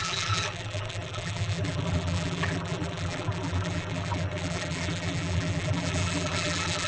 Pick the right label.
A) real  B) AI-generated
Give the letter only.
B